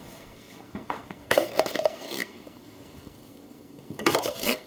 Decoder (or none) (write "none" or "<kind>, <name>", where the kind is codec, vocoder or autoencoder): codec, SNAC